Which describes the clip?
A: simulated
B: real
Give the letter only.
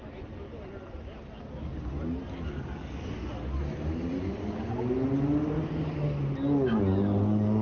B